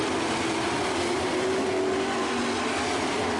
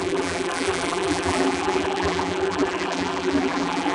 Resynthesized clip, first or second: second